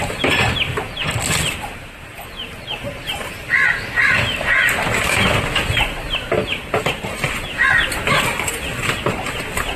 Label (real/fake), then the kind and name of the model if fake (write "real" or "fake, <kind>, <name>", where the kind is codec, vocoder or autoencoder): real